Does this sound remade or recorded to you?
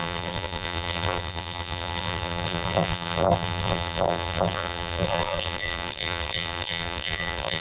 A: remade